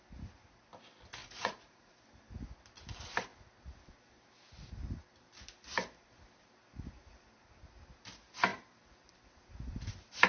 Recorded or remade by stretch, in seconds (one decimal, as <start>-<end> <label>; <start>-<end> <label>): 0.0-1.2 recorded; 1.2-2.0 remade; 2.0-10.3 recorded